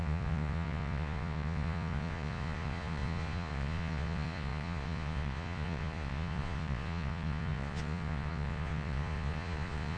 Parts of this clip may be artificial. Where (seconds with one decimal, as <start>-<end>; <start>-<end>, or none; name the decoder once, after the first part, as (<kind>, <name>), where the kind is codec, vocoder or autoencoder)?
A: 0.0-10.0 (vocoder, Vocos)